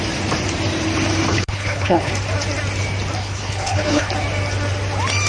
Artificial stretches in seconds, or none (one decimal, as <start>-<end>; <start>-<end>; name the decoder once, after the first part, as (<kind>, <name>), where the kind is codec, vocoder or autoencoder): 1.3-2.1 (codec, HILCodec); 3.2-4.1

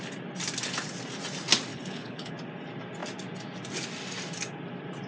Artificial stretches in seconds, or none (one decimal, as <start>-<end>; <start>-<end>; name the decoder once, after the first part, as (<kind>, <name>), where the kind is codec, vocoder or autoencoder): 1.7-2.3 (codec, HILCodec)

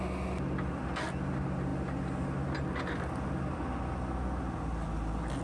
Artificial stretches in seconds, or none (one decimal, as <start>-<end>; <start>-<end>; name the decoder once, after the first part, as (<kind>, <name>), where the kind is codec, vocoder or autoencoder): none

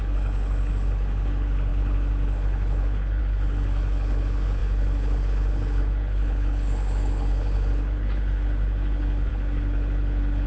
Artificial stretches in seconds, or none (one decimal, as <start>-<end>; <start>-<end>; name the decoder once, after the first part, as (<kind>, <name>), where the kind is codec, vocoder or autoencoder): 0.0-10.5 (codec, HILCodec)

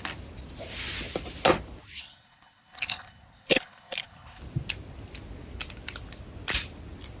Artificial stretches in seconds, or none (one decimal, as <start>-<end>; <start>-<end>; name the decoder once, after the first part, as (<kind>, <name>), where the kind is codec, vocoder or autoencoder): 2.0-4.4 (codec, HILCodec)

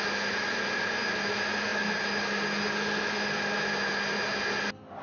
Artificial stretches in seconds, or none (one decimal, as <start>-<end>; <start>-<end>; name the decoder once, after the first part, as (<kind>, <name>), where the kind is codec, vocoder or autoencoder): none